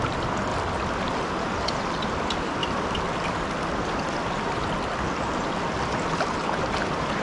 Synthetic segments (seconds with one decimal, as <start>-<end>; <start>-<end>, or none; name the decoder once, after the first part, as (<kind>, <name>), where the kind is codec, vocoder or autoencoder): none